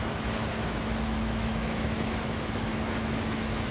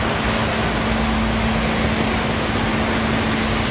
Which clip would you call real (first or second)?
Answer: second